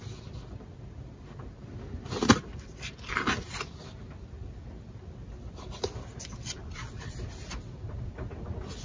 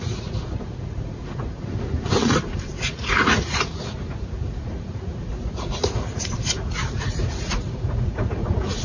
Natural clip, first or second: first